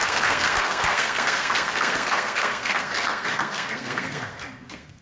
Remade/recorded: remade